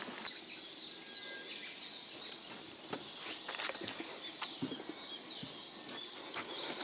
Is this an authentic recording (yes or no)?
yes